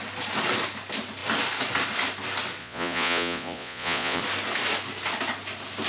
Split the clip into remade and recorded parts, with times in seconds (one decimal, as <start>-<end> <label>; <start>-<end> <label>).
0.0-2.6 recorded; 2.6-4.2 remade; 4.2-5.9 recorded